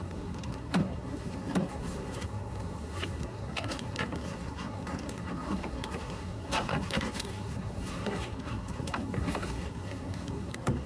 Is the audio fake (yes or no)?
yes